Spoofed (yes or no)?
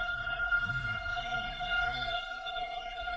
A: yes